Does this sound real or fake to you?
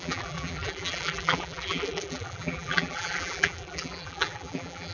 fake